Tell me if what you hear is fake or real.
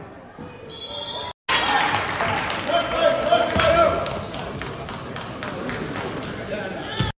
real